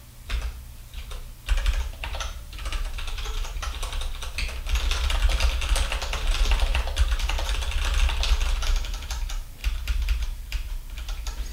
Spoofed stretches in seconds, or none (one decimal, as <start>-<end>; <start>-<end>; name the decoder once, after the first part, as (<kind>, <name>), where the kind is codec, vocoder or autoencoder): 1.9-4.1 (vocoder, BigVGAN v2); 6.7-7.3; 9.6-10.7